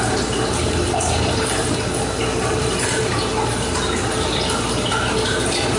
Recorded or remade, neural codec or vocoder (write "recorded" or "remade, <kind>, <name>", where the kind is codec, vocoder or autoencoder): recorded